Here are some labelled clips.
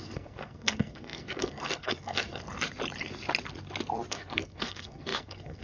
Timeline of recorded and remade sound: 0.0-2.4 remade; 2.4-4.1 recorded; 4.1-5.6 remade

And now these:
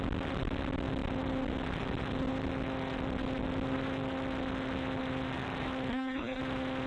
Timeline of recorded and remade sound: 0.0-5.9 recorded; 5.9-6.4 remade; 6.4-6.9 recorded

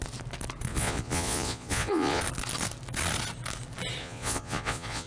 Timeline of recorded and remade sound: 0.0-0.7 recorded; 0.7-2.2 remade; 2.2-4.0 recorded; 4.0-5.1 remade

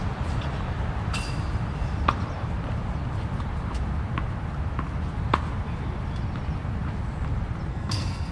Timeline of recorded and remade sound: 0.0-7.7 recorded; 7.7-8.3 remade

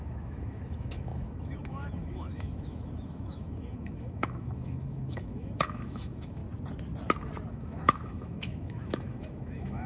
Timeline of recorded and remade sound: 0.0-6.4 remade; 6.4-7.5 recorded; 7.5-9.9 remade

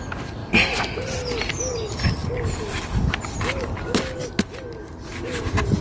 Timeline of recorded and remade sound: 0.0-5.8 recorded

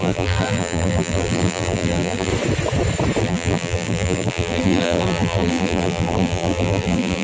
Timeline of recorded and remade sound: 0.0-2.3 remade; 2.3-3.2 recorded; 3.2-7.2 remade

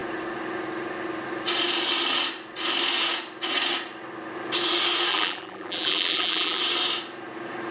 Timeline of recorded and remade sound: 0.0-5.1 recorded; 5.1-6.6 remade; 6.6-7.7 recorded